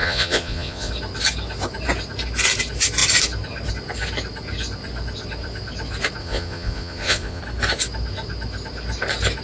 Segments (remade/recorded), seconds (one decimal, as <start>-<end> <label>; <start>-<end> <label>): 0.0-0.9 remade; 0.9-6.2 recorded; 6.2-7.4 remade; 7.4-9.4 recorded